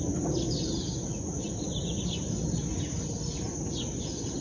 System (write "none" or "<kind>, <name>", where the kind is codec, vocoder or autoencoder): none